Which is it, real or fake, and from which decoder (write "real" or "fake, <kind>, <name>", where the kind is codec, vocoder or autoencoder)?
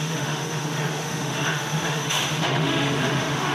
fake, autoencoder, DAC-VAE